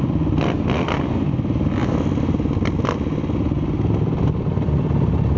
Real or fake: real